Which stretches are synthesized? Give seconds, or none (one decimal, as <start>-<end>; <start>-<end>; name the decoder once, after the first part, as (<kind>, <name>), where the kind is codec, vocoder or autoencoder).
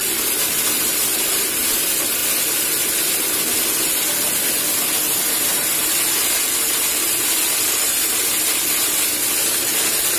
none